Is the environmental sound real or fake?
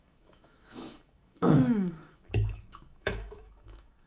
fake